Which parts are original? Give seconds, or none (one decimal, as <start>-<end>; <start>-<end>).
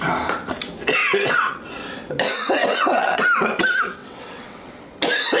0.0-1.0; 1.7-2.6; 3.2-4.0; 4.7-5.4